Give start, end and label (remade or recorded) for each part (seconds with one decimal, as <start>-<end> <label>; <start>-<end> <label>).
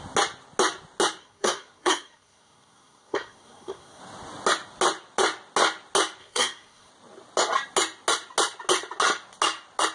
0.0-1.2 recorded; 1.2-4.0 remade; 4.0-6.2 recorded; 6.2-6.9 remade; 6.9-9.9 recorded